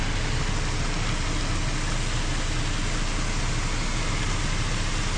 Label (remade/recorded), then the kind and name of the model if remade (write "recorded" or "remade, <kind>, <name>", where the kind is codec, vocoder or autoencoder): recorded